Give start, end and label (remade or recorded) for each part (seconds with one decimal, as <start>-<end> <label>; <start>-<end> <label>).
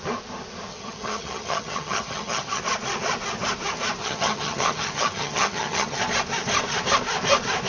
0.0-0.7 recorded; 0.7-2.6 remade; 2.6-4.0 recorded; 4.0-6.0 remade; 6.0-7.7 recorded